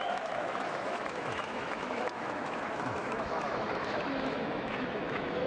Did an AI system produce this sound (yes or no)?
yes